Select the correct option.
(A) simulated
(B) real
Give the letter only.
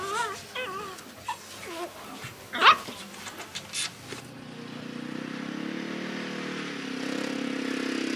B